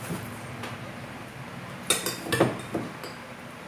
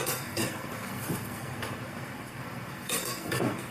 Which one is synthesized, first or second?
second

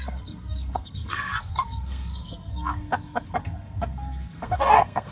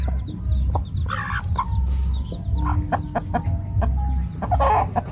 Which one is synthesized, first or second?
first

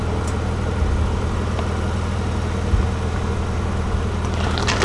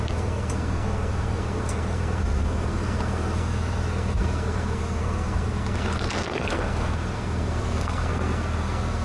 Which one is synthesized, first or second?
second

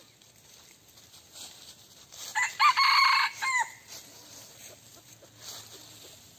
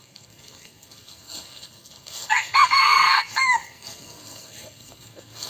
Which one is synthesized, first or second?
second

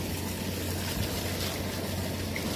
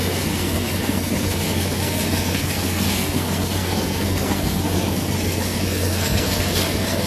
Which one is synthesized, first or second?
second